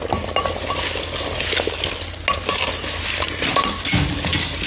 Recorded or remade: recorded